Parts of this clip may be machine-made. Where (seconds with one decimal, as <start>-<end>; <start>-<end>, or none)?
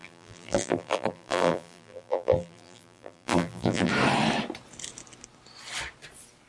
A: 0.0-3.9